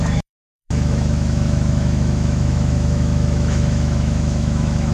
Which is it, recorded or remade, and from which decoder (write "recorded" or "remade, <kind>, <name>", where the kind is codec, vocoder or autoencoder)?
remade, autoencoder, DAC-VAE